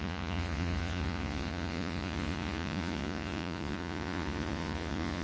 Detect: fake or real fake